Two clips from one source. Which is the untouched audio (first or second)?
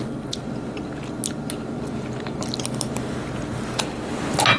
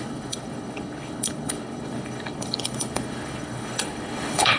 first